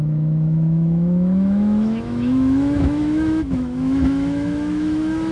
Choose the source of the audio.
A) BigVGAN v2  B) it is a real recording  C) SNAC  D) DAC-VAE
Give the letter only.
D